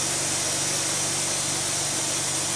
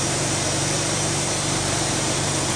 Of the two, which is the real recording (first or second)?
first